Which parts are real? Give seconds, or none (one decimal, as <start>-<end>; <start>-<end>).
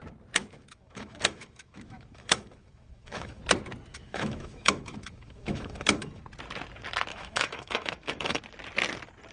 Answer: 0.0-0.4; 3.4-3.9; 6.2-7.1; 8.4-9.3